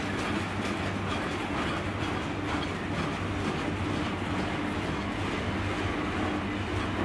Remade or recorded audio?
recorded